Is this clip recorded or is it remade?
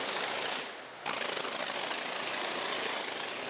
recorded